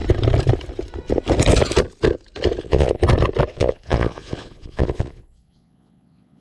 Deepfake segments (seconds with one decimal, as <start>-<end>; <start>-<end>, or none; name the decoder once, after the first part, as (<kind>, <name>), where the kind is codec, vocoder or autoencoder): 2.6-3.0 (vocoder, Vocos); 3.5-6.4

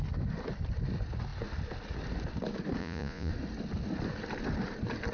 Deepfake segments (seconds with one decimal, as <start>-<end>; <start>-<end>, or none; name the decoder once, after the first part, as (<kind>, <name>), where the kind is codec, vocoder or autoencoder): 2.8-3.3 (vocoder, Vocos)

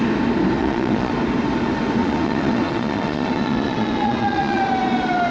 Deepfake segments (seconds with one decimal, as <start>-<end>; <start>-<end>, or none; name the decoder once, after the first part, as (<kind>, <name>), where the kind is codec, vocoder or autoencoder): 0.6-1.1 (vocoder, Vocos); 2.0-4.6